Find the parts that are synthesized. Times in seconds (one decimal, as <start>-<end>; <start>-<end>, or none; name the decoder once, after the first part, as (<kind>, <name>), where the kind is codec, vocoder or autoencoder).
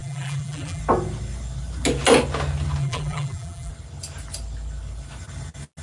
0.0-0.8 (vocoder, BigVGAN v2); 2.8-3.7